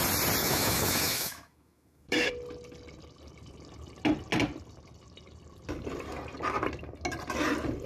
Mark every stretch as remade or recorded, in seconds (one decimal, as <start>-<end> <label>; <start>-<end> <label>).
0.0-0.4 recorded; 0.4-2.3 remade; 2.3-7.9 recorded